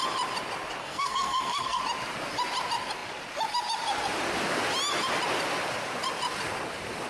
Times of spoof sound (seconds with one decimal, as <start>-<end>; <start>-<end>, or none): 0.8-1.8